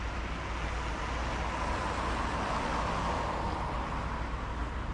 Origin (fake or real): real